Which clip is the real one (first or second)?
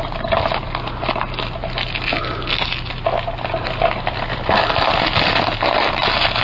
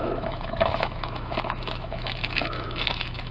first